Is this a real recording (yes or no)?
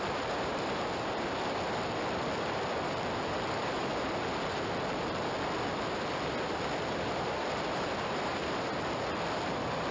no